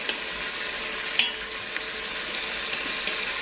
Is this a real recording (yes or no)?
yes